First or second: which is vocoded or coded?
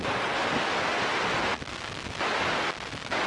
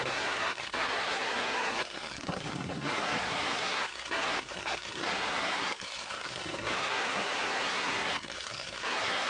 second